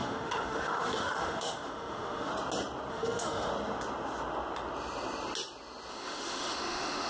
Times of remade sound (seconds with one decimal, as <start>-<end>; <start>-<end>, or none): 0.0-2.3; 2.9-3.5; 5.9-7.1